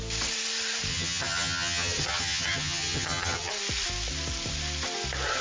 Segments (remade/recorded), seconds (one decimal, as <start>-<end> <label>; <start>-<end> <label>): 0.0-0.9 recorded; 0.9-3.5 remade; 3.5-5.4 recorded